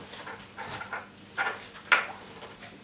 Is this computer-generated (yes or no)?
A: no